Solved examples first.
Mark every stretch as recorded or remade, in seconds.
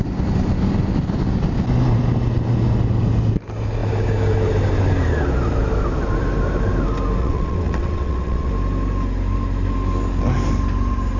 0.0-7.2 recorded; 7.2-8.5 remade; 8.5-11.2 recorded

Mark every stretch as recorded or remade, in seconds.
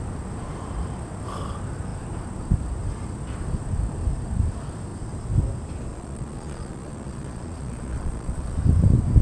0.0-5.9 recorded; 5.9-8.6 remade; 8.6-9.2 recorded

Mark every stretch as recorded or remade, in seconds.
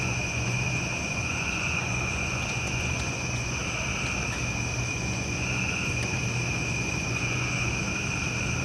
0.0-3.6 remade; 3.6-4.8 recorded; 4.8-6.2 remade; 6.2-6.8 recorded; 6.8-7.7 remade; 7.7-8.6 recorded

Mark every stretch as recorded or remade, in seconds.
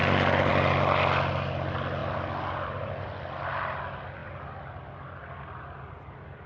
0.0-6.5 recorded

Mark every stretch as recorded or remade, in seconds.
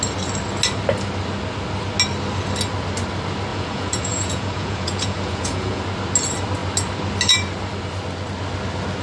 0.0-3.5 recorded; 3.5-5.8 remade; 5.8-9.0 recorded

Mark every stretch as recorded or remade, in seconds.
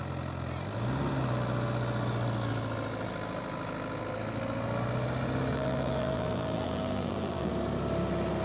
0.0-5.5 recorded; 5.5-7.5 remade; 7.5-8.4 recorded